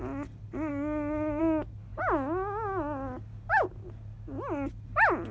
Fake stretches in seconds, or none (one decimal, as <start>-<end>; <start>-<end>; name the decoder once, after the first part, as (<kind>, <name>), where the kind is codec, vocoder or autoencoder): none